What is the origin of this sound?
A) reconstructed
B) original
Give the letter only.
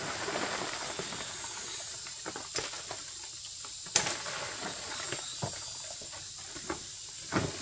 B